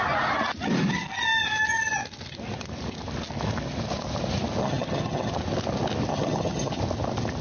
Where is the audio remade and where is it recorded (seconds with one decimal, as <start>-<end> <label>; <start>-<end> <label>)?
0.0-4.6 recorded; 4.6-5.3 remade; 5.3-6.1 recorded; 6.1-6.8 remade; 6.8-7.4 recorded